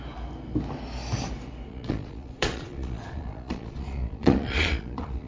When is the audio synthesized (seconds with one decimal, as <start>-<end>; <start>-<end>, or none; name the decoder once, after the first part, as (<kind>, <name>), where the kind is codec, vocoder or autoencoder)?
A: 1.7-5.3 (vocoder, Vocos)